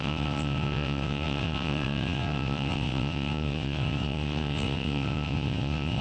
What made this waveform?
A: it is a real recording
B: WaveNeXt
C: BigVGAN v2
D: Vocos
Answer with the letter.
B